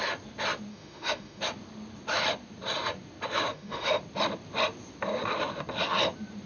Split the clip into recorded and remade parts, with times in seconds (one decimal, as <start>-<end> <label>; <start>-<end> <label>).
0.0-0.7 recorded; 0.7-1.4 remade; 1.4-3.5 recorded; 3.5-4.0 remade; 4.0-6.5 recorded